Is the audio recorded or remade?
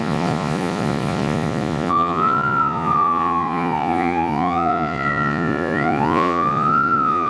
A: remade